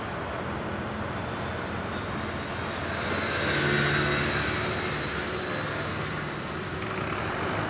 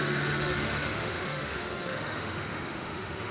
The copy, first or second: second